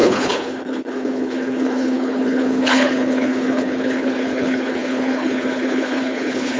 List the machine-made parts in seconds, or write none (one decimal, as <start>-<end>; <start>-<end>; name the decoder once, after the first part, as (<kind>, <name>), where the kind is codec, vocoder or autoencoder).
0.0-6.6 (codec, HILCodec)